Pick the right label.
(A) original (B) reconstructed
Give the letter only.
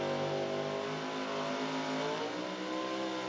A